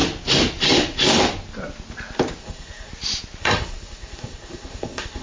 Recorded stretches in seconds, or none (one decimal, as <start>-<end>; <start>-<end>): 0.0-2.4; 2.9-3.4